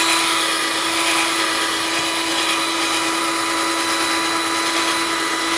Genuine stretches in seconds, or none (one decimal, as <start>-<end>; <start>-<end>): 0.0-5.6